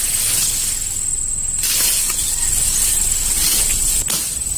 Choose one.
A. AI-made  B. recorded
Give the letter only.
B